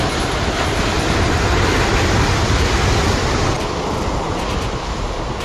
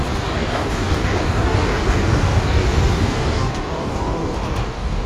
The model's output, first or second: second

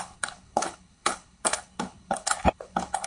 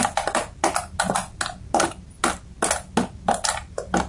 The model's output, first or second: first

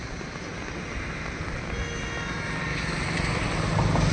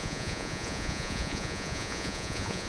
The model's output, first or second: second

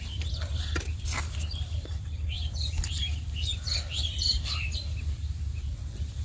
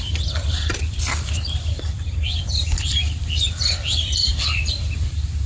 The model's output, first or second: second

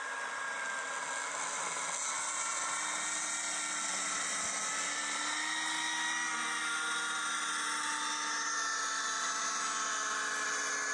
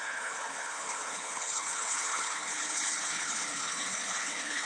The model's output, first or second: second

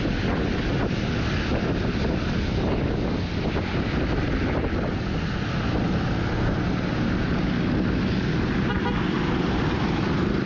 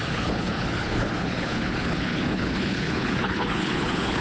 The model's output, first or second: second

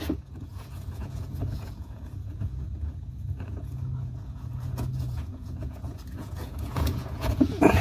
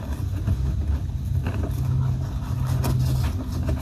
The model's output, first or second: first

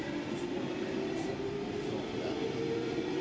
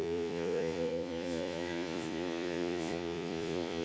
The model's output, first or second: second